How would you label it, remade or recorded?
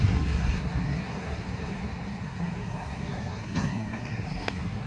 remade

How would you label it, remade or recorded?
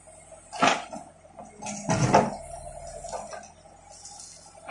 recorded